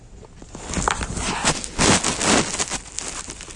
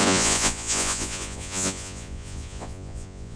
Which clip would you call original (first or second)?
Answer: first